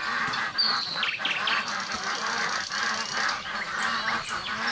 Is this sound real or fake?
real